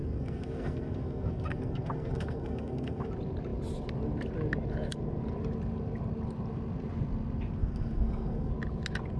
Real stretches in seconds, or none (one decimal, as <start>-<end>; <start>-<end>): 3.1-7.6; 8.5-9.2